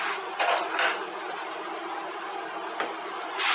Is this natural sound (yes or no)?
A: yes